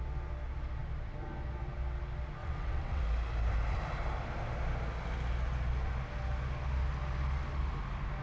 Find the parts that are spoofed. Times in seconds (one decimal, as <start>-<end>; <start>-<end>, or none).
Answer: 2.4-3.0